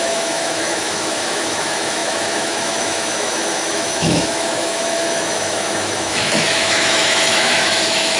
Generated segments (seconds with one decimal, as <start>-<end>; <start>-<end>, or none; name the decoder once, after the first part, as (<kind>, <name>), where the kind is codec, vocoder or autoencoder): 0.0-8.2 (autoencoder, DAC-VAE)